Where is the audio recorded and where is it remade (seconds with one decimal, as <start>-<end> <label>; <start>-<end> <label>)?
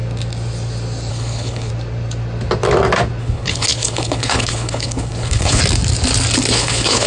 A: 0.0-1.1 recorded; 1.1-1.7 remade; 1.7-3.2 recorded; 3.2-5.6 remade; 5.6-6.5 recorded; 6.5-7.1 remade